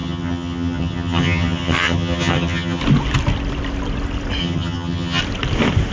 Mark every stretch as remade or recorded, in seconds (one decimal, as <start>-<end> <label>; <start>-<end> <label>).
0.0-2.8 remade; 2.8-4.4 recorded; 4.4-5.2 remade; 5.2-5.9 recorded